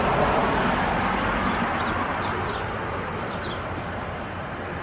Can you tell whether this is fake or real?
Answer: real